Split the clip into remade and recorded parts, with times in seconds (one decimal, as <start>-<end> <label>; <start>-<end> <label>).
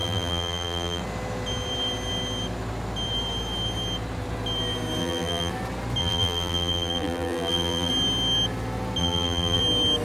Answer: 0.0-1.0 remade; 1.0-5.0 recorded; 5.0-5.5 remade; 5.5-6.0 recorded; 6.0-7.9 remade; 7.9-9.0 recorded; 9.0-9.6 remade; 9.6-10.0 recorded